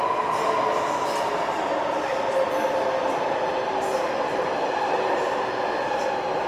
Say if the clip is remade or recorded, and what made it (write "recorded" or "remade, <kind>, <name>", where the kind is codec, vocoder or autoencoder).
recorded